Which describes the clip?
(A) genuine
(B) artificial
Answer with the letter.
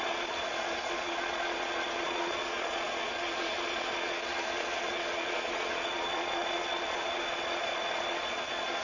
B